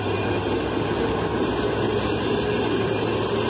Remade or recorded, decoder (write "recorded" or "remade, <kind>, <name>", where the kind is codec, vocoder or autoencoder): recorded